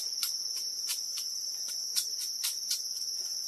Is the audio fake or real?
real